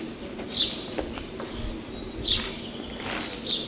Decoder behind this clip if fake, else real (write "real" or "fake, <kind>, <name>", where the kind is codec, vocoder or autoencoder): real